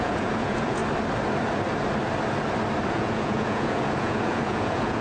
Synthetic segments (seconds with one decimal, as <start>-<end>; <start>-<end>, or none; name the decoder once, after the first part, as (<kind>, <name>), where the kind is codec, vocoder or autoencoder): 0.0-0.8 (vocoder, Vocos); 2.9-5.0